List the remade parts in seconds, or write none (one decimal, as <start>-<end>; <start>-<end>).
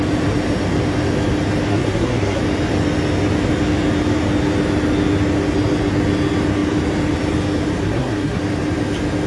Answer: 1.7-2.4; 7.8-8.4